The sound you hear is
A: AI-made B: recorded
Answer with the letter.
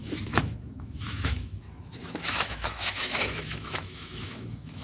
A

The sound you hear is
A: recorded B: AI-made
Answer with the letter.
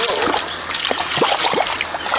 A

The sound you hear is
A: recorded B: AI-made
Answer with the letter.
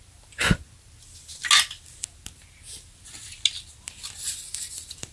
A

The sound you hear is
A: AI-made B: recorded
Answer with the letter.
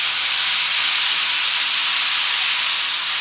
B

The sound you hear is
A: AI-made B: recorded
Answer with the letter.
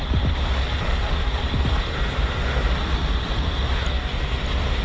B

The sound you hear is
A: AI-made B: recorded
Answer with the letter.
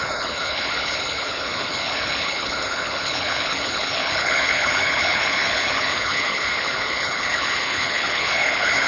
A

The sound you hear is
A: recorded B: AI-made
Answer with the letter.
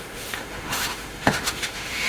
B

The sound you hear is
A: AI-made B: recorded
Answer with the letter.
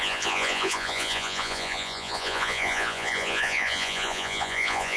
A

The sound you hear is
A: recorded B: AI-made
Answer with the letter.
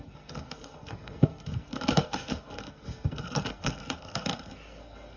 B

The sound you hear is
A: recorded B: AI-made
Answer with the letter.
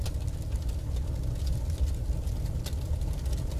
A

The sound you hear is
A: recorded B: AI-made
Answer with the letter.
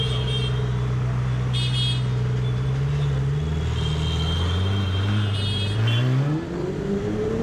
A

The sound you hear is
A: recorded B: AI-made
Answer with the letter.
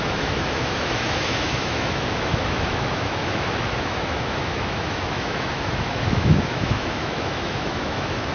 B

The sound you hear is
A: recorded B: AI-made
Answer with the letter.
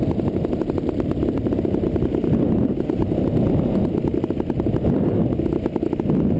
B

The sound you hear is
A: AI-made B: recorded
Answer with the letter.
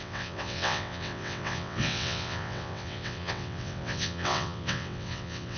A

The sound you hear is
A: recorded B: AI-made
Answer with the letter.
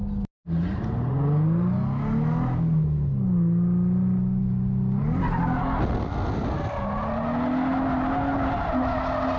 A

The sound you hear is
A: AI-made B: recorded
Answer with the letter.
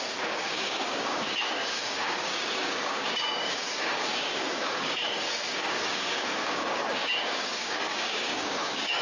A